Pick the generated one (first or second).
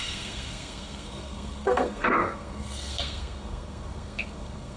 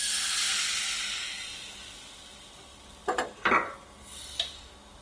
first